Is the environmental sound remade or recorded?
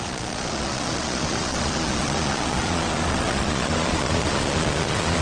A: remade